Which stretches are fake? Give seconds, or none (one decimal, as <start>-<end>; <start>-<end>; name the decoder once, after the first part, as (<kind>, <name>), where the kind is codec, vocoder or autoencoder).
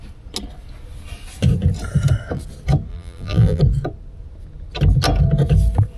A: 2.9-3.6 (vocoder, BigVGAN v2)